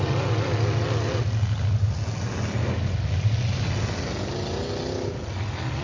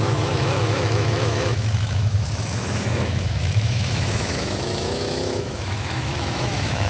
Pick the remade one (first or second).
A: second